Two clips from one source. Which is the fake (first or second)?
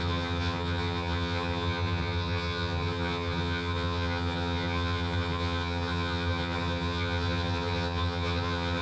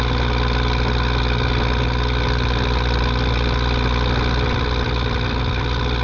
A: first